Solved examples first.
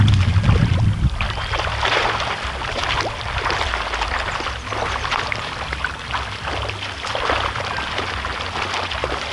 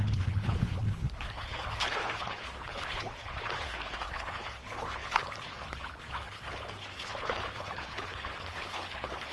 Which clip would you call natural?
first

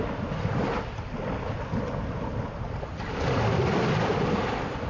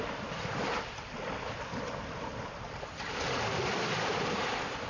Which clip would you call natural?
first